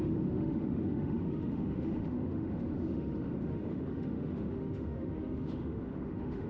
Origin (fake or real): fake